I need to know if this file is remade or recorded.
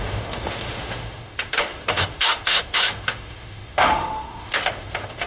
remade